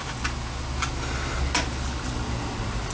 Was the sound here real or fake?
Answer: real